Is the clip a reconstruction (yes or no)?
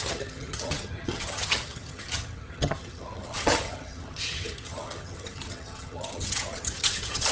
yes